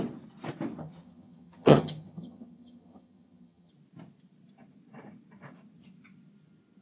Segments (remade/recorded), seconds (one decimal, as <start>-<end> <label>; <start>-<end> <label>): 0.0-0.8 recorded; 0.8-3.7 remade; 3.7-6.8 recorded